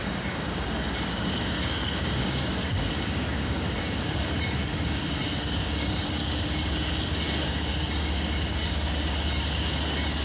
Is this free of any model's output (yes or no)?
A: no